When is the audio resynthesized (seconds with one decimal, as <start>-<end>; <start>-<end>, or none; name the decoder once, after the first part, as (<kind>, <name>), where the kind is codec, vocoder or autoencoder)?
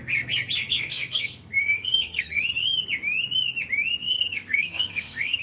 0.6-2.4 (codec, SNAC); 4.0-5.4